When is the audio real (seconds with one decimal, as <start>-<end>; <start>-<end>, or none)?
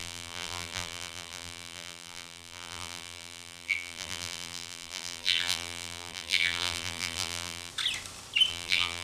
7.7-8.5